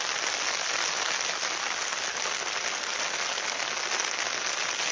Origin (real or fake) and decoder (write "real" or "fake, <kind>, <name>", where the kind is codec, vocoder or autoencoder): real